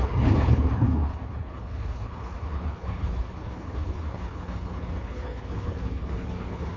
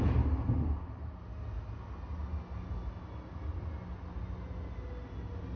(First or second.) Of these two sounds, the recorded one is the second